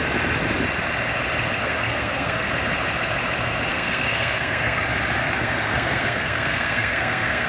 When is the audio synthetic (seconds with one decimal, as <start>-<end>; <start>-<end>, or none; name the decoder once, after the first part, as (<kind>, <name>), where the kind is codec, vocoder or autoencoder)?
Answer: 1.6-2.5 (codec, SNAC); 3.7-4.8; 5.2-7.5